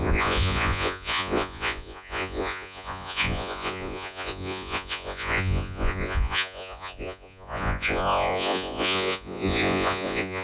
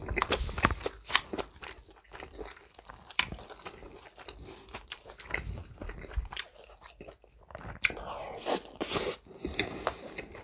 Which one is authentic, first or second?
second